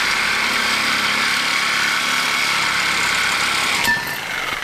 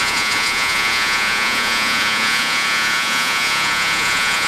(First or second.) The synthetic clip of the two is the second